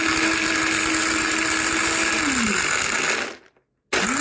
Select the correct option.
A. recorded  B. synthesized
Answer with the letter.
A